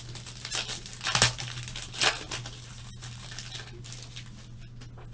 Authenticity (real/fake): real